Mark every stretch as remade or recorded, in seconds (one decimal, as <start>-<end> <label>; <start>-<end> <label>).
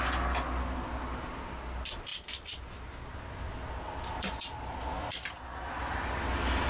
0.0-6.7 recorded